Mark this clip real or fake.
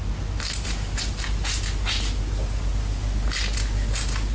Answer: real